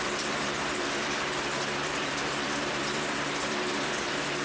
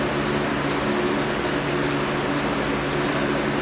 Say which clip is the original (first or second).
second